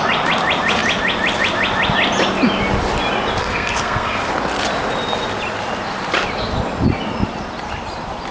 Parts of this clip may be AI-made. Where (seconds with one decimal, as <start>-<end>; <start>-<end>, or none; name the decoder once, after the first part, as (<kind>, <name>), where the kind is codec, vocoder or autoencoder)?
3.4-4.3 (codec, SNAC)